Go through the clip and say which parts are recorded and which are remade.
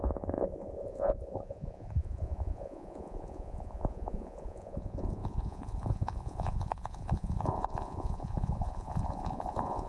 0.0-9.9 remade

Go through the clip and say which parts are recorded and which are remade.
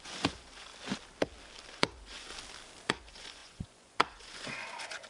0.0-0.7 remade; 0.7-1.7 recorded; 1.7-2.3 remade; 2.3-2.9 recorded; 2.9-5.1 remade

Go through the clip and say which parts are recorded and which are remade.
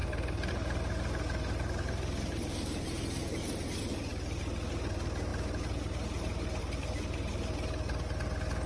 0.0-8.7 recorded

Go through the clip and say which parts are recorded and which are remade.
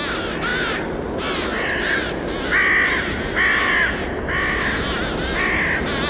0.0-6.1 recorded